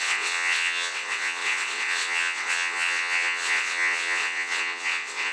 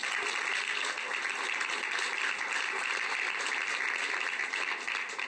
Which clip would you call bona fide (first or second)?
second